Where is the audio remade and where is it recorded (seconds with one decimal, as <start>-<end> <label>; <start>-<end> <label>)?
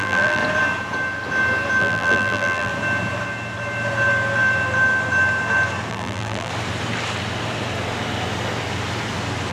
0.0-0.4 remade; 0.4-1.8 recorded; 1.8-2.7 remade; 2.7-5.9 recorded; 5.9-6.5 remade; 6.5-9.5 recorded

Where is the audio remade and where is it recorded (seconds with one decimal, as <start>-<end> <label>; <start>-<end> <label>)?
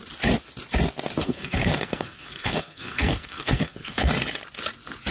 0.0-1.2 recorded; 1.2-4.1 remade; 4.1-5.1 recorded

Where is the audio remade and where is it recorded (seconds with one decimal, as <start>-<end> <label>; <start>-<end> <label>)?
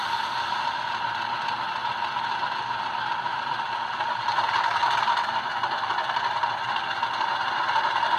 0.0-1.4 recorded; 1.4-5.5 remade; 5.5-6.0 recorded; 6.0-8.2 remade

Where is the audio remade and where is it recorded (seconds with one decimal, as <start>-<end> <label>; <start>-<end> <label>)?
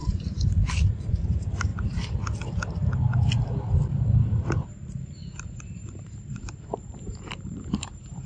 0.0-1.7 remade; 1.7-5.0 recorded; 5.0-8.3 remade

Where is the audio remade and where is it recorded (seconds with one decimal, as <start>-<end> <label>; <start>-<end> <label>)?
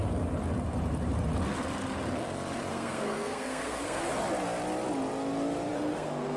0.0-2.7 recorded; 2.7-4.1 remade; 4.1-5.7 recorded; 5.7-6.4 remade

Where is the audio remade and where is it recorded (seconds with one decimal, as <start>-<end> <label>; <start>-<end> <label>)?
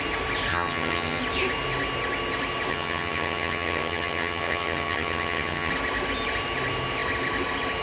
0.0-0.5 recorded; 0.5-1.2 remade; 1.2-2.7 recorded; 2.7-5.7 remade; 5.7-7.8 recorded